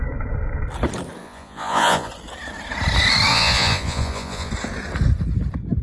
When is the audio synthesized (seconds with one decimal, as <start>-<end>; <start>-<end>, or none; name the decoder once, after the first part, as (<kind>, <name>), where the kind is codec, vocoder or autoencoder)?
1.2-2.1 (vocoder, Vocos); 3.3-4.5